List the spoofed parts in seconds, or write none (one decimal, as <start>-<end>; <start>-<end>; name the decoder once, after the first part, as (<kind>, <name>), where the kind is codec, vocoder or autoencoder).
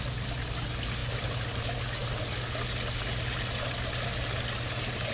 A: none